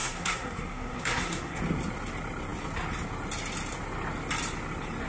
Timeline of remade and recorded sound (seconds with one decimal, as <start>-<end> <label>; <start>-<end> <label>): 0.0-1.6 remade; 1.6-5.1 recorded